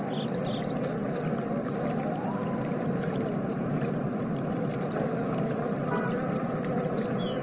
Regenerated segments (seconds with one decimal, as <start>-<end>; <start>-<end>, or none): none